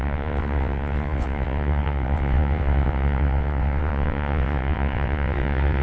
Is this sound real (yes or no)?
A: no